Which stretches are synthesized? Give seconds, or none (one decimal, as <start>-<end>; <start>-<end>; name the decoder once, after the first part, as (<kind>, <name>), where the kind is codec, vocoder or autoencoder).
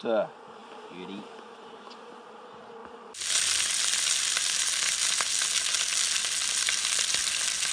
none